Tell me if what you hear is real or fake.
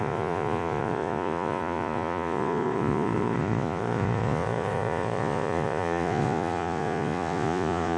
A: fake